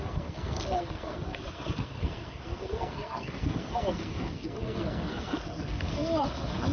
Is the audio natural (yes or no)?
no